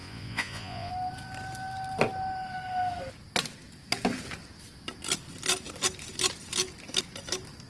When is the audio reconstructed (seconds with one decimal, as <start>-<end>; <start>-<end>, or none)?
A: 0.0-0.9